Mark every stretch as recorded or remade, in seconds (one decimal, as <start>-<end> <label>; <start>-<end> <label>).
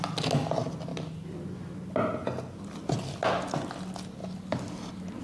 0.0-4.2 recorded; 4.2-5.2 remade